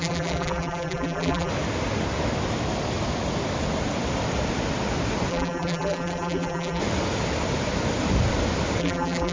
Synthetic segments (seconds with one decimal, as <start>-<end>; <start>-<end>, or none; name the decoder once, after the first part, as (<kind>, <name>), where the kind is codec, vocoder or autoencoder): 0.0-1.5 (vocoder, BigVGAN v2); 5.3-6.8; 8.8-9.3